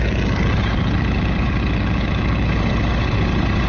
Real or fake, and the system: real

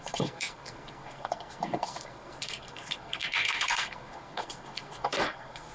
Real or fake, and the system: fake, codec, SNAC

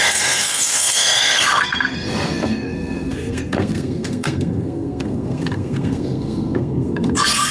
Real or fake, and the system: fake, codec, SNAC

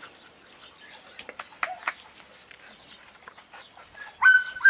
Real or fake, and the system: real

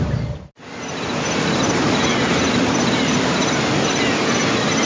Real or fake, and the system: real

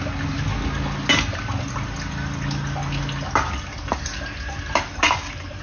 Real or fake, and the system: real